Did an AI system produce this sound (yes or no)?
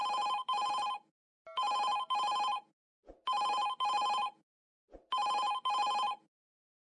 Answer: no